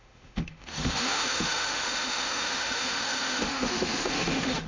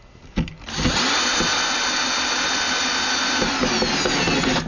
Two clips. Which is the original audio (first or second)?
second